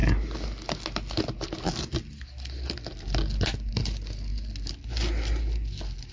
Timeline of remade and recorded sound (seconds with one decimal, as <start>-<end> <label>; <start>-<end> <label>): 0.0-6.1 recorded